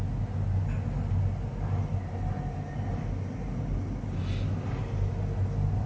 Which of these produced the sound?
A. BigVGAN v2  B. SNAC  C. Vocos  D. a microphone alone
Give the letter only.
D